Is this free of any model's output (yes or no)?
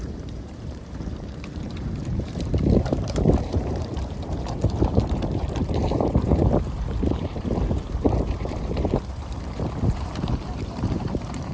no